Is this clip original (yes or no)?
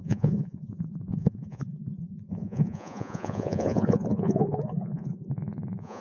no